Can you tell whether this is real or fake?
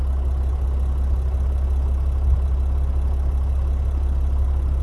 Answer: real